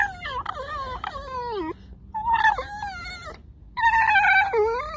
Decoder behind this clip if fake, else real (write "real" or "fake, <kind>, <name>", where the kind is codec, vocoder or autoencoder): real